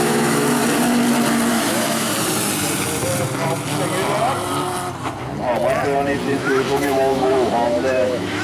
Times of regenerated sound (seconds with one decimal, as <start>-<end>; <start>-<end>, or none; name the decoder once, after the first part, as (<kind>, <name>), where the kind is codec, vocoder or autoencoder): 0.0-0.6 (autoencoder, DAC-VAE); 1.5-2.1; 6.4-8.4

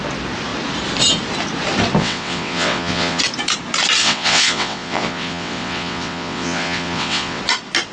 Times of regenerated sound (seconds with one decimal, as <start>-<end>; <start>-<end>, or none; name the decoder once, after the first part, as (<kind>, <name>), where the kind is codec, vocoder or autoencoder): 2.0-3.2 (vocoder, WaveNeXt); 4.0-7.4

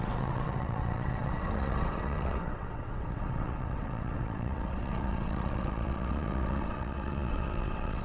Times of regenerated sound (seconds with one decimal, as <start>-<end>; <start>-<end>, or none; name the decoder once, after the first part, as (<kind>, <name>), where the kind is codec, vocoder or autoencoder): 0.0-8.0 (vocoder, WaveNeXt)

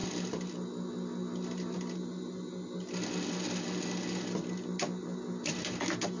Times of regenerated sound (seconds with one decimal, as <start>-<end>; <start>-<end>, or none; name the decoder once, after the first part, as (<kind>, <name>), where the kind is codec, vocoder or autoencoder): none

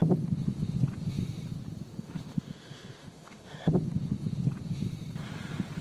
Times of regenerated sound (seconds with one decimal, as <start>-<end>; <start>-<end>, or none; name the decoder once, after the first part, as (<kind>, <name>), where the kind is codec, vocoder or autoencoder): 1.9-3.7 (autoencoder, DAC-VAE)

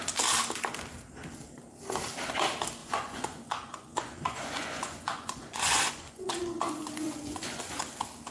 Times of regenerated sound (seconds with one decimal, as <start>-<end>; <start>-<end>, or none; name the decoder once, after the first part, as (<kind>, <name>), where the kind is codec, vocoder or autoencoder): 2.8-7.7 (vocoder, Vocos)

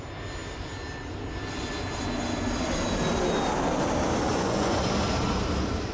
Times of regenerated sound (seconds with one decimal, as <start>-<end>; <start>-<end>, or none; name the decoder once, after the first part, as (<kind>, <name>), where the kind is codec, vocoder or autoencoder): 4.3-4.8 (vocoder, Vocos)

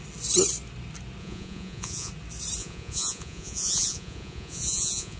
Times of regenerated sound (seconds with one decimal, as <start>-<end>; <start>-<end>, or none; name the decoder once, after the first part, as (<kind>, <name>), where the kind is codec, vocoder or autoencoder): 1.2-2.1 (vocoder, Vocos); 2.6-5.2